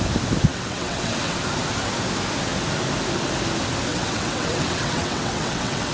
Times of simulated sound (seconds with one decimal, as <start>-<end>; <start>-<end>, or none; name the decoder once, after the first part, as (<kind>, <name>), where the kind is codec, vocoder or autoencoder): 0.5-1.4 (vocoder, WaveNeXt); 3.9-5.9